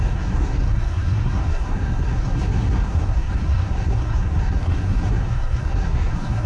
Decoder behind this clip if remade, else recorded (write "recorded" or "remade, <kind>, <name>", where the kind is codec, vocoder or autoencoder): remade, codec, SNAC